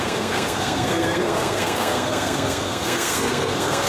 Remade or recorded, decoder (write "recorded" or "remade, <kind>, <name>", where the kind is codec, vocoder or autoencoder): remade, codec, SNAC